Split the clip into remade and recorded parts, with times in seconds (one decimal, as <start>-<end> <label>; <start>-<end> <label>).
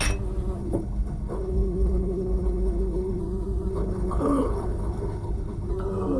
0.0-0.6 recorded; 0.6-3.2 remade; 3.2-3.7 recorded; 3.7-5.7 remade; 5.7-6.2 recorded